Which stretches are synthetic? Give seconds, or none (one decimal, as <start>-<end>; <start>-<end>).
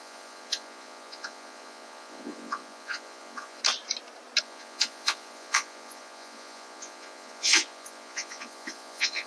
0.0-3.6; 4.4-9.3